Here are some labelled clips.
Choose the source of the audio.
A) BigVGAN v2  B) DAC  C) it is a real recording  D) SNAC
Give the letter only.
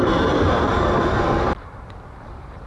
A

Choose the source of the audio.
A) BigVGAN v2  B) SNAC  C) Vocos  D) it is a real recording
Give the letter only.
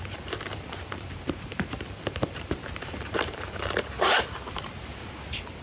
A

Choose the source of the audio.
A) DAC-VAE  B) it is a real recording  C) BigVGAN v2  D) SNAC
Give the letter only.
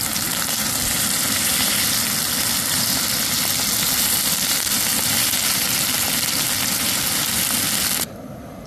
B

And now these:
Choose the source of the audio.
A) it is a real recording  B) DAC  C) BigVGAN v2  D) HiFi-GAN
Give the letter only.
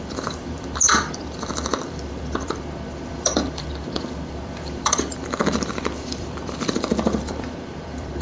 C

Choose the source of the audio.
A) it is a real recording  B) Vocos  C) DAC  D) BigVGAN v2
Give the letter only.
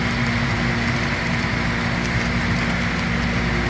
A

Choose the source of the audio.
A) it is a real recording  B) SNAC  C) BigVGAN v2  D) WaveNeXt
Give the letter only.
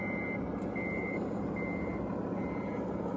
A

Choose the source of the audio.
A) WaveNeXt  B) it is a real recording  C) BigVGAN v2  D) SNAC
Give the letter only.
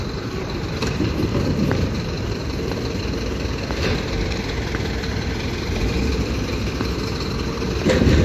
C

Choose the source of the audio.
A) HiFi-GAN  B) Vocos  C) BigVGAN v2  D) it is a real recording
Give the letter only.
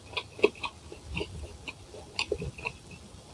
D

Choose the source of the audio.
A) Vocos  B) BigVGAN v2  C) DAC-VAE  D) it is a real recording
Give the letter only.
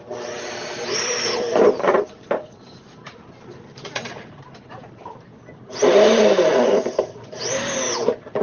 B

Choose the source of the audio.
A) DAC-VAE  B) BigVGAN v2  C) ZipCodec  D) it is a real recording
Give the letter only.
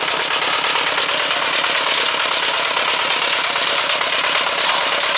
D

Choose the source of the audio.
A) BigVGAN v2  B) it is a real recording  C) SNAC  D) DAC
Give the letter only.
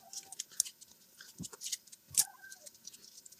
B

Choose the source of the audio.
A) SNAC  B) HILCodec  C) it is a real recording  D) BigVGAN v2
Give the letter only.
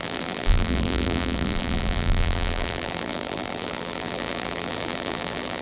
D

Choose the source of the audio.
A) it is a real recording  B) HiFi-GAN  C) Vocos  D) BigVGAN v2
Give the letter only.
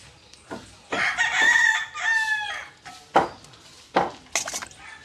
A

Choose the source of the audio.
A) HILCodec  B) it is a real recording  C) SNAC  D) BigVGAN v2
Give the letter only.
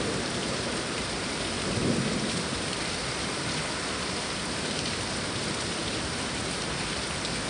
D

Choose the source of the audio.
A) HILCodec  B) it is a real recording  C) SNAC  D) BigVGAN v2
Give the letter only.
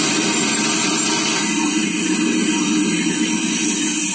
B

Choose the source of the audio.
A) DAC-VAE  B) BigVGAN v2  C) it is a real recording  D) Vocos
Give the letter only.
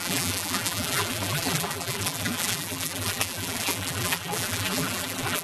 B